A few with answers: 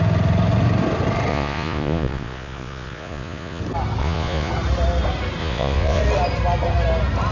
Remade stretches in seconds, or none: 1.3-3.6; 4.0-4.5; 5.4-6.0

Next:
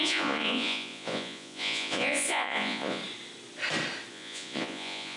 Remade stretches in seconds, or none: 0.0-3.0; 4.1-5.2

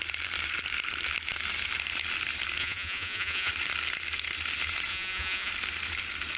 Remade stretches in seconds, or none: 2.6-3.5; 4.9-5.5